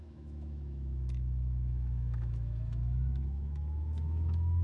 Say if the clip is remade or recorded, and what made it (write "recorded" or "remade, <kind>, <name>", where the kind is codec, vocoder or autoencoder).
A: remade, autoencoder, DAC-VAE